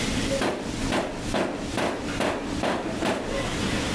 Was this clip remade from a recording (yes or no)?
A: no